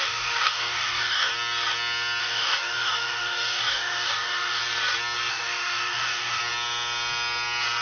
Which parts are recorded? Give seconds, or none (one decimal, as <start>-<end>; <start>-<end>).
1.3-2.2; 4.6-5.3; 6.4-7.8